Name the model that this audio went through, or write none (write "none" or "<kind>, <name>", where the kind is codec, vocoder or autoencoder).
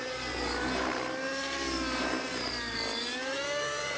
none